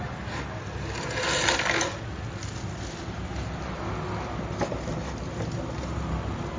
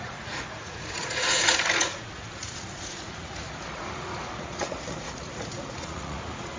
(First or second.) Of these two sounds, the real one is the first